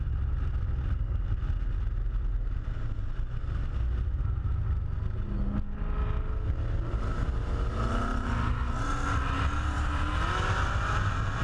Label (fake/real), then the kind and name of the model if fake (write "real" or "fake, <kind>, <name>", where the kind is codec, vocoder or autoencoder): real